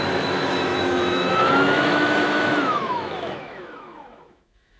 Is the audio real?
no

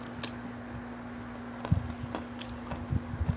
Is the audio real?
yes